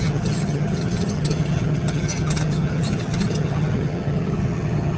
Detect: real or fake fake